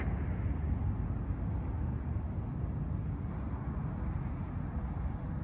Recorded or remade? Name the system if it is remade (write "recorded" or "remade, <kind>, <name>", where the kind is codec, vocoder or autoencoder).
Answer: recorded